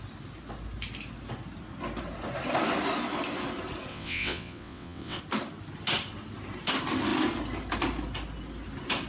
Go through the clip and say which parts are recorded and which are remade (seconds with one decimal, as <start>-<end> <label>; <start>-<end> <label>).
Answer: 0.0-3.9 recorded; 3.9-5.2 remade; 5.2-9.1 recorded